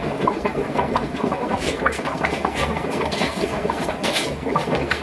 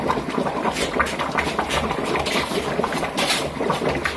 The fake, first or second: first